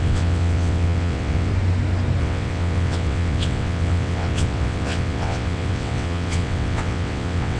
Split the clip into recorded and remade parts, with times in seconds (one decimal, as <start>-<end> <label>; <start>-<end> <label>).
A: 0.0-1.5 remade; 1.5-2.2 recorded; 2.2-7.6 remade